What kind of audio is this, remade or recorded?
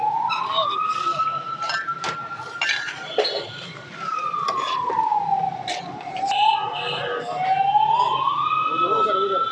recorded